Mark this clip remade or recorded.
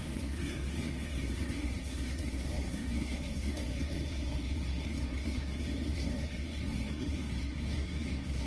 remade